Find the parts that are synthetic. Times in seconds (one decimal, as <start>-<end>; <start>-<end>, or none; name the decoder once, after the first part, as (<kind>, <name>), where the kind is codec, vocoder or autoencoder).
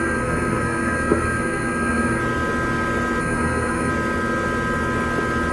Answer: 0.0-2.2 (codec, SNAC); 3.2-3.9